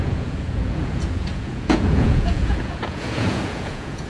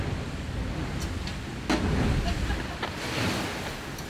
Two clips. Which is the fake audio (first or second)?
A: first